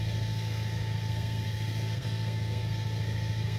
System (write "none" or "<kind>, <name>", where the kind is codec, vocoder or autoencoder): codec, SNAC